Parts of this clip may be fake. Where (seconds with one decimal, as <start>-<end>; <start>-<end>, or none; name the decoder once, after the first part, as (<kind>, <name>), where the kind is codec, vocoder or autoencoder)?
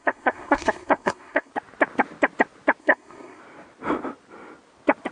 0.0-1.5 (codec, SNAC); 2.8-3.4